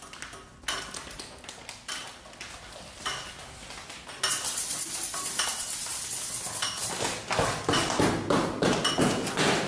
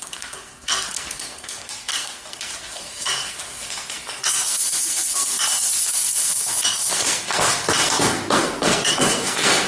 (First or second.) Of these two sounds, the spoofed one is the second